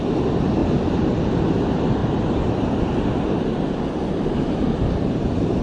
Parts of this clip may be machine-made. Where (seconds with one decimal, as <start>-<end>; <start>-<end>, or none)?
0.6-1.2

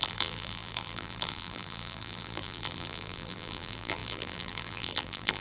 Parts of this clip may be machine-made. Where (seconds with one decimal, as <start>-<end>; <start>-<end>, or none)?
0.0-5.4

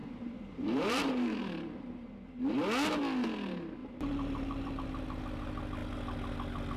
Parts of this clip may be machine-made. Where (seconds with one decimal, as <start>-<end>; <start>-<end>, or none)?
0.0-2.1; 3.8-4.7

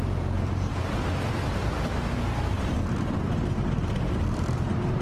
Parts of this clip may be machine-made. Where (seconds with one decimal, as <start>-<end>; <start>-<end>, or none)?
0.0-0.7; 3.7-5.0

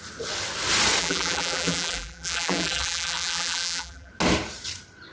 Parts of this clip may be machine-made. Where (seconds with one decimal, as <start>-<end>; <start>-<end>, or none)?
1.0-4.1

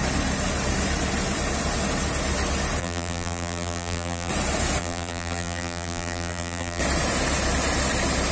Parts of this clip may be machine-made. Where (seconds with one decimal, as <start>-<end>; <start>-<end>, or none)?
2.8-4.3; 4.8-6.8

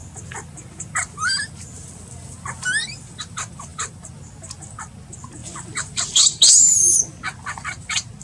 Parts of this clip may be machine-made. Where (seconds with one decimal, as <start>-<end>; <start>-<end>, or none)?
3.7-4.5; 5.4-6.2

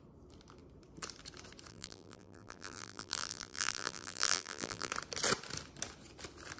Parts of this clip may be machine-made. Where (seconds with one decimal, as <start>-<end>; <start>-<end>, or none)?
1.7-4.9